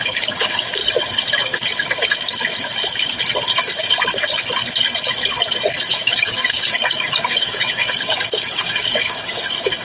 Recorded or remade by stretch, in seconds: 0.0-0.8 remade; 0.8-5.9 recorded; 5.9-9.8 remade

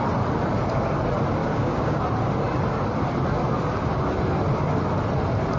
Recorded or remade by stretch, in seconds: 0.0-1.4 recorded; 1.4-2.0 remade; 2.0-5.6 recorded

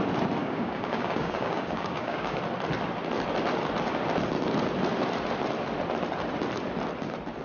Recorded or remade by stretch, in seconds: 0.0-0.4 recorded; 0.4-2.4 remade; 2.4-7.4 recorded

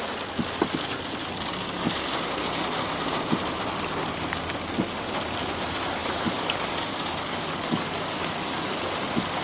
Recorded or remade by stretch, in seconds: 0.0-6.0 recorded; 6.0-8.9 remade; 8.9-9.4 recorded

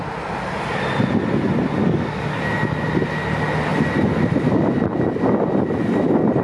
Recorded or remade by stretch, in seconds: 0.0-1.8 recorded; 1.8-2.4 remade; 2.4-6.4 recorded